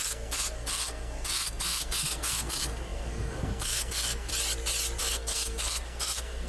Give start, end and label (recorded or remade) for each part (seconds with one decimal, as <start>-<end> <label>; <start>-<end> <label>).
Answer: 0.0-4.3 remade; 4.3-5.0 recorded; 5.0-6.5 remade